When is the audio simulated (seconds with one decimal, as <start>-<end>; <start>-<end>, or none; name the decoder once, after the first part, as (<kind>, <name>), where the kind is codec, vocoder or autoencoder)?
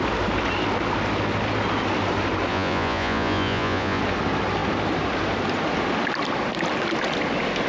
2.5-4.0 (vocoder, Vocos)